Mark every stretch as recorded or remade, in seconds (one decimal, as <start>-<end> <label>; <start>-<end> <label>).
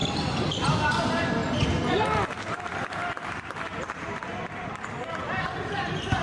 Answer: 0.0-0.8 recorded; 0.8-1.4 remade; 1.4-3.8 recorded; 3.8-6.2 remade